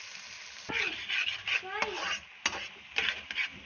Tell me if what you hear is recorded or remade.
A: recorded